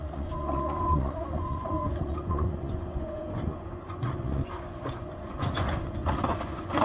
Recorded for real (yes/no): no